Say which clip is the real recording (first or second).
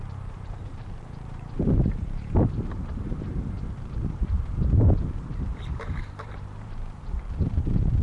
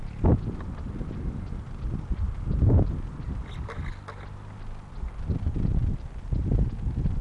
second